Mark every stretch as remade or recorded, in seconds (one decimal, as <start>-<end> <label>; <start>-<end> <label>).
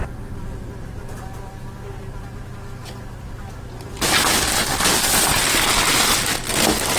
0.0-7.0 recorded